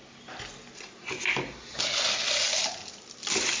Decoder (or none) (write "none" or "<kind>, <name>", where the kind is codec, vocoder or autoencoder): none